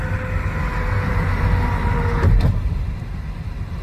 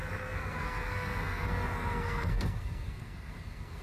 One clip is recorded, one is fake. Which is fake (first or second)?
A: second